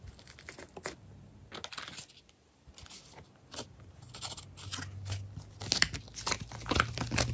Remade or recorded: recorded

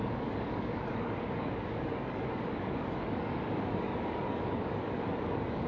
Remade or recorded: remade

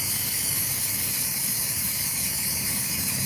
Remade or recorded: remade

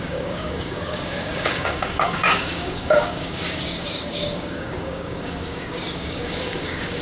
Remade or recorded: remade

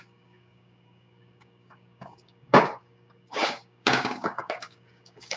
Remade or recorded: remade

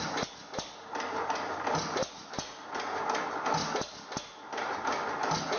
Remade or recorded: recorded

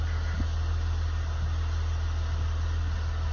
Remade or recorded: recorded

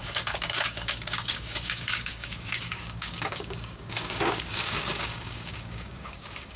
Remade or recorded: remade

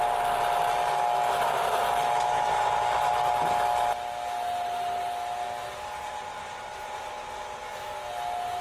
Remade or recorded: recorded